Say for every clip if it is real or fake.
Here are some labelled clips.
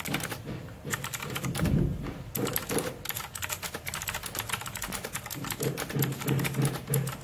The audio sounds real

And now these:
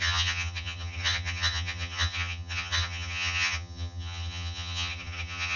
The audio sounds fake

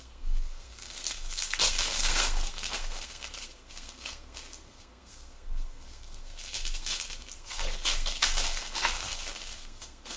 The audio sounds fake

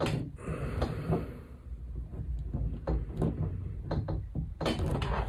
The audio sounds real